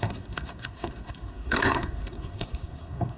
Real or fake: fake